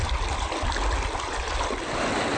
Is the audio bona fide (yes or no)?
yes